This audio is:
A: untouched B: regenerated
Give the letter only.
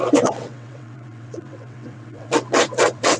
B